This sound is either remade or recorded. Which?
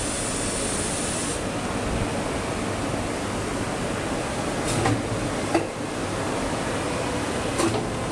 recorded